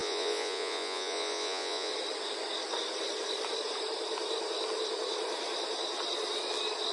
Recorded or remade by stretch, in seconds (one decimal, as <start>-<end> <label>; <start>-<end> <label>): 0.0-1.9 remade; 1.9-6.9 recorded